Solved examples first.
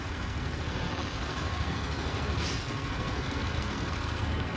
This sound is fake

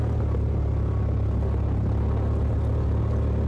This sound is real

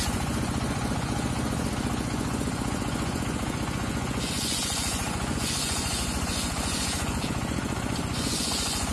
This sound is fake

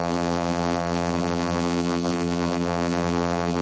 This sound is fake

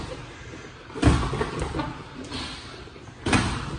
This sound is real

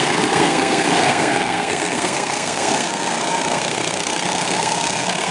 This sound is fake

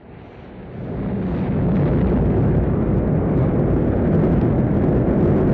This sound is real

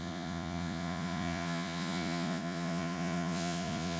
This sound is fake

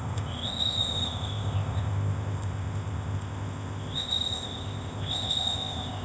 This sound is fake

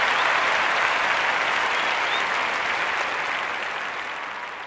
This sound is real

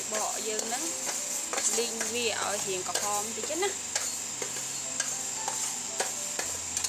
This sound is real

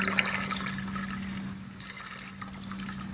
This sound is real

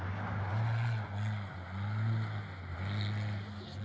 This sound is real